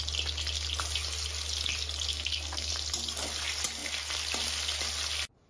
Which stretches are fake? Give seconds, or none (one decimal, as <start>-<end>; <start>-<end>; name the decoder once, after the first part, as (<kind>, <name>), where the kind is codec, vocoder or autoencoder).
2.1-2.7 (codec, SNAC)